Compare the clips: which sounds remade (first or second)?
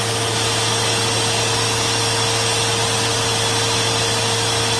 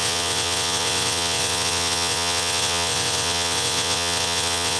second